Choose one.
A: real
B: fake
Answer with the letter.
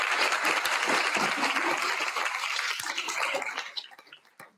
A